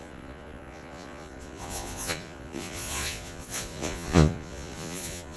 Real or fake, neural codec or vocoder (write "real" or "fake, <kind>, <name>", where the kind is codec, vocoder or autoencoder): fake, vocoder, Vocos